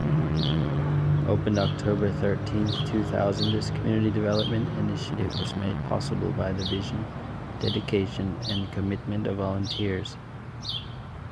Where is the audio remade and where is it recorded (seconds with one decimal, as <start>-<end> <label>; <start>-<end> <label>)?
0.0-0.8 remade; 0.8-5.0 recorded; 5.0-5.9 remade; 5.9-11.3 recorded